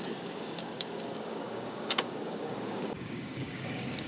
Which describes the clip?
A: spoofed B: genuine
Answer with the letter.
A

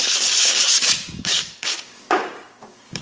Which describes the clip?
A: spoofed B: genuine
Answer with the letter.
A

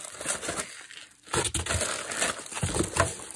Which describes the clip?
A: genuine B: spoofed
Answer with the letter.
A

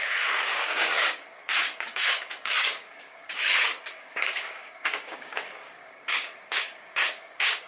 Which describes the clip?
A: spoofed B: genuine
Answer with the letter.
A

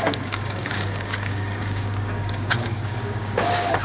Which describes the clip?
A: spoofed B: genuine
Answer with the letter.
A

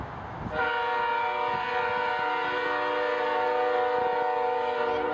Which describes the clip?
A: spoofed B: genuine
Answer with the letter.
B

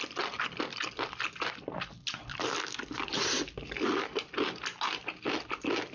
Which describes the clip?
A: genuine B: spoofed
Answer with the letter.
A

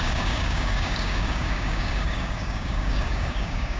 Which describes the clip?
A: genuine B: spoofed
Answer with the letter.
B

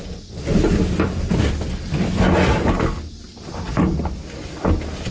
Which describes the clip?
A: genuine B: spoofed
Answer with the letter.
A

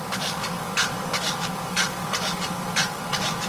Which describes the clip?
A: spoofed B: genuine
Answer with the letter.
A